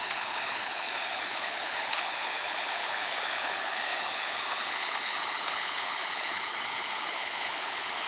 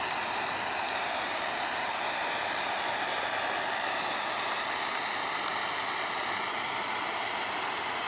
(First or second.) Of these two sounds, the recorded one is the second